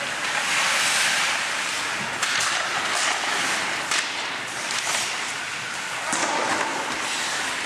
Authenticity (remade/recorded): recorded